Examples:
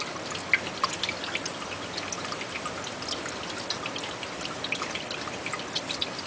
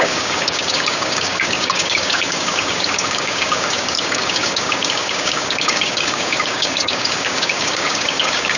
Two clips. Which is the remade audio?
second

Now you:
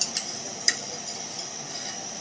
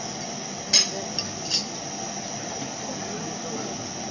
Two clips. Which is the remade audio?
first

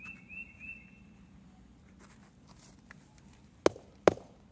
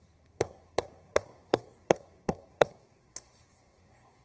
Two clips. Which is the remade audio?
second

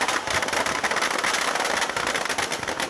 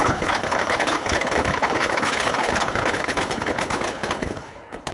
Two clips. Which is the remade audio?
second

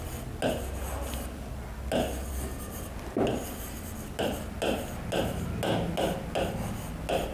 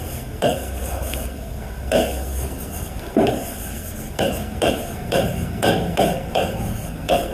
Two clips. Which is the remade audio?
second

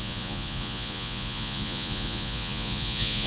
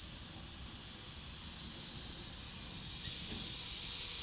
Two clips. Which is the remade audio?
first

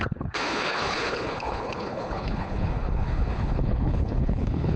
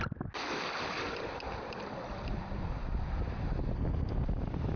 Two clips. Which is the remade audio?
first